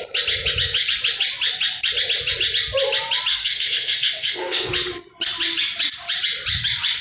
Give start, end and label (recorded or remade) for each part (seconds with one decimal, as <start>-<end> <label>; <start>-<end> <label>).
0.0-3.3 recorded; 3.3-4.7 remade; 4.7-7.0 recorded